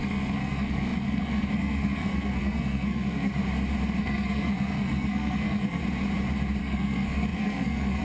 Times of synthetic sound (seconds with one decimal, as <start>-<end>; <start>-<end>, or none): 0.0-3.4; 4.0-5.8; 6.6-8.0